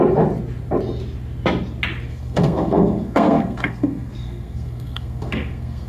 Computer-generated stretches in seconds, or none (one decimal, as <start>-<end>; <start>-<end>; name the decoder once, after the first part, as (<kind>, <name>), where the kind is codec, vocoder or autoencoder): 2.1-5.9 (codec, SNAC)